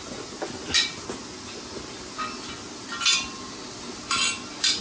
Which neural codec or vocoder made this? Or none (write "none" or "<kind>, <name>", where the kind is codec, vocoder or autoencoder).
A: none